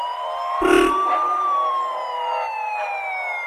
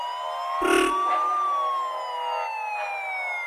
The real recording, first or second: second